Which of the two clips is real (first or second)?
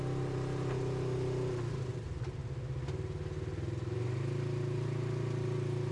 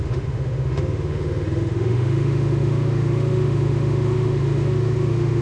first